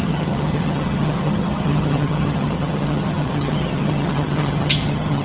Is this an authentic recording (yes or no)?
no